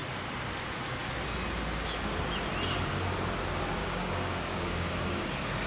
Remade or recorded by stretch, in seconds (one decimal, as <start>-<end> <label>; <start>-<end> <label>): 0.0-3.8 recorded; 3.8-5.3 remade; 5.3-5.7 recorded